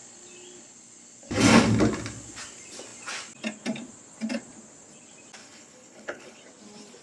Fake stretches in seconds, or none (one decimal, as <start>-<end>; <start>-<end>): 5.4-6.4